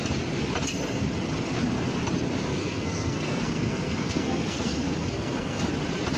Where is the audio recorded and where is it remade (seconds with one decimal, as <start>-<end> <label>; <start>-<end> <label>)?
0.0-2.5 recorded; 2.5-5.6 remade; 5.6-6.2 recorded